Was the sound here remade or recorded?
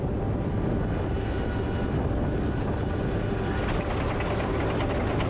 recorded